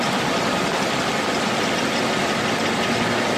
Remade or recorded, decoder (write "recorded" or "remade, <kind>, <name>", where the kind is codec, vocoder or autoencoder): recorded